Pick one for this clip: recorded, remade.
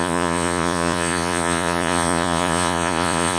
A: remade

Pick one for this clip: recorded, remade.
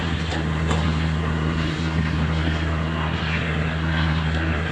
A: remade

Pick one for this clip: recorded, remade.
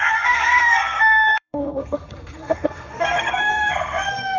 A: remade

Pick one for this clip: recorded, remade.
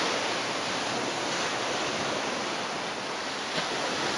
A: recorded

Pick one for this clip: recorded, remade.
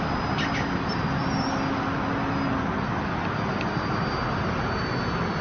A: recorded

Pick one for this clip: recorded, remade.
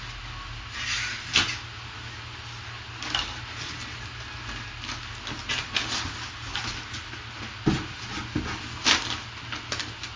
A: recorded